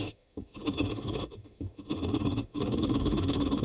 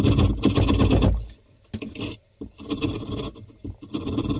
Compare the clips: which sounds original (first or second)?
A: second